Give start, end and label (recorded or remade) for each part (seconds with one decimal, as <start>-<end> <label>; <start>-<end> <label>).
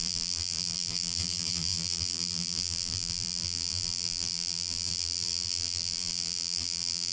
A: 0.0-7.1 remade